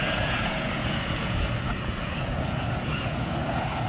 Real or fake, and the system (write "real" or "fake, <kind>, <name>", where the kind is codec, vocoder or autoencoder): fake, vocoder, Vocos